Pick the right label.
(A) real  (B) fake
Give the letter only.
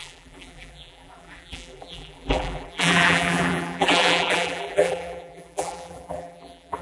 B